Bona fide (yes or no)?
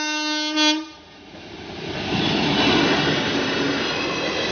yes